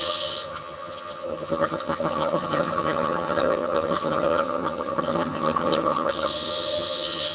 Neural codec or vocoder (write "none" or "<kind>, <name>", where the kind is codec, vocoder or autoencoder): vocoder, HiFi-GAN